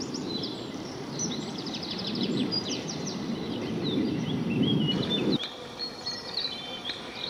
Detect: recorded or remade remade